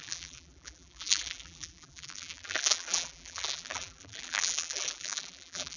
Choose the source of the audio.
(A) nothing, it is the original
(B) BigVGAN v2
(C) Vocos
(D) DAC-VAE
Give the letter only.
B